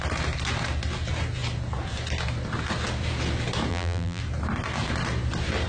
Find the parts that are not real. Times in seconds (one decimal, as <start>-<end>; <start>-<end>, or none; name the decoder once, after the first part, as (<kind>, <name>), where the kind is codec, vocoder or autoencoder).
3.7-4.2 (vocoder, BigVGAN v2)